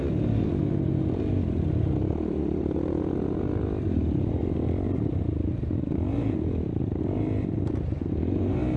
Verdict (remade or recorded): recorded